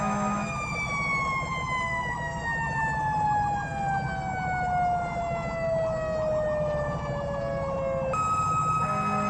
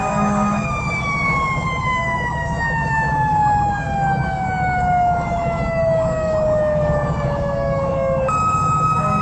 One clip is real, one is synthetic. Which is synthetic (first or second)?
second